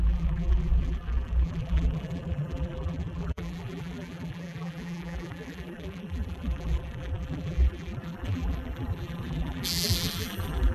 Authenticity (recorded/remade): remade